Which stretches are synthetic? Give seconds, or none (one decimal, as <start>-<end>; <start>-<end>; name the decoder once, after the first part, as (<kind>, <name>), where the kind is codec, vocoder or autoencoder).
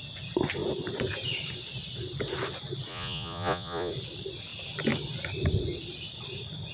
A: 2.9-3.9 (vocoder, Vocos)